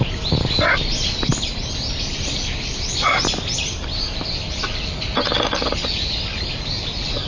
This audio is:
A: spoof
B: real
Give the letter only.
B